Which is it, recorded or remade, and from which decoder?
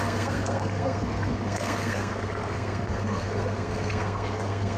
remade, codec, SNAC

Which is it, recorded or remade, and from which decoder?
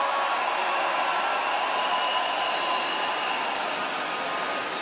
recorded